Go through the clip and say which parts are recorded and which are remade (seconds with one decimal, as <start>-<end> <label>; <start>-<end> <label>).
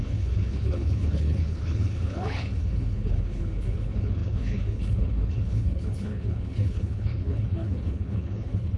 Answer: 0.0-8.8 remade